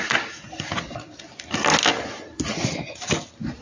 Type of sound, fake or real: real